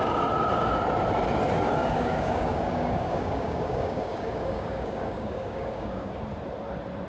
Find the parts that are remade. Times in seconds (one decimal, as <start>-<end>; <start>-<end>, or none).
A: 1.8-6.1